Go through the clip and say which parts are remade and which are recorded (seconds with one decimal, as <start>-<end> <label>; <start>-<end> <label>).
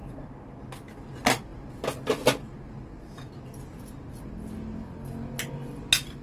0.0-6.2 recorded